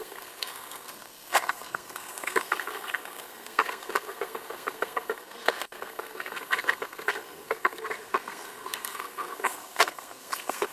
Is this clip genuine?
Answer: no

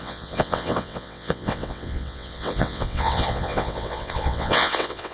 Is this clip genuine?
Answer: no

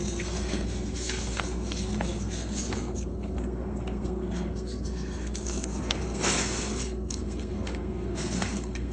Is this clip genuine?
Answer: no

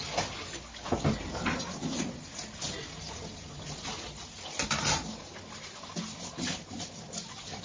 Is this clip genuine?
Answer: yes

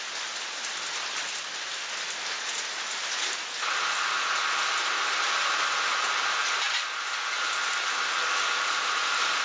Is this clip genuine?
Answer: yes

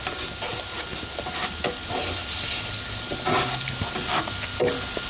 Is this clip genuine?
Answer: yes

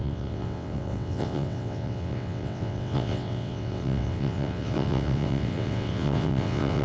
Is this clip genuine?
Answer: no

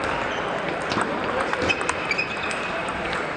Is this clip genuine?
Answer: no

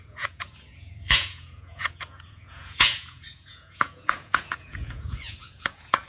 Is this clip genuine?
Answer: no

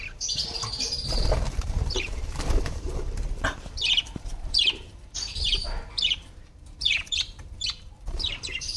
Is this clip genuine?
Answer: no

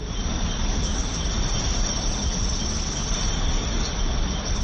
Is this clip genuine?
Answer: yes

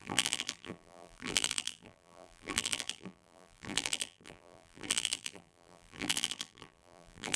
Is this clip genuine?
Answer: no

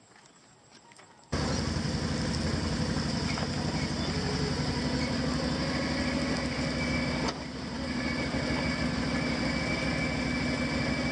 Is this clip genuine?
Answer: yes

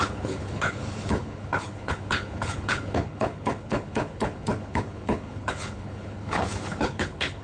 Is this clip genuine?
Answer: no